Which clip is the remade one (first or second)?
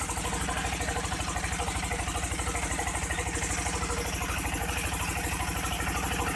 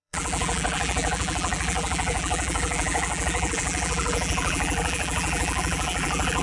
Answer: second